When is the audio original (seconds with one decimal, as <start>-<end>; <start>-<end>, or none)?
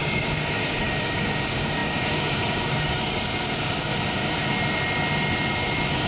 3.9-6.1